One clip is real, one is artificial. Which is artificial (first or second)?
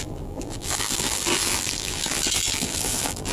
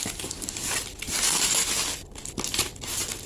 first